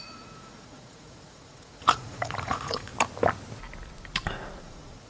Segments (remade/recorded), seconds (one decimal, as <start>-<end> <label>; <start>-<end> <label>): 0.0-2.9 remade; 2.9-4.6 recorded; 4.6-5.1 remade